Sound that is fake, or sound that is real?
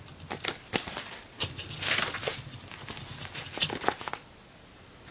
real